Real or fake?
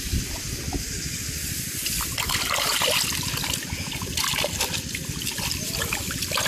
real